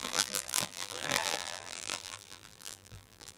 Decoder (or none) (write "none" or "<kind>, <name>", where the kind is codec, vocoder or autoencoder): vocoder, BigVGAN v2